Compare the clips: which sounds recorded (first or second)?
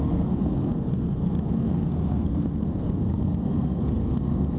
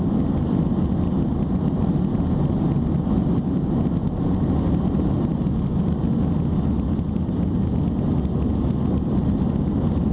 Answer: second